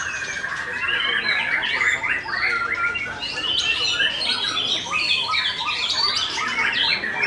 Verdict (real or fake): real